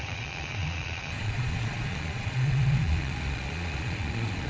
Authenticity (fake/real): fake